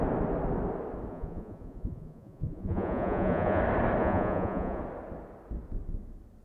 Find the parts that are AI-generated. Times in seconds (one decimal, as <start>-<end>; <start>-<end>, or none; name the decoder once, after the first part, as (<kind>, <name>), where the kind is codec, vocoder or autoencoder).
1.1-3.6 (vocoder, Vocos); 4.0-4.8